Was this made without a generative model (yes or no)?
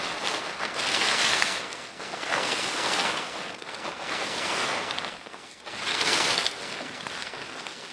no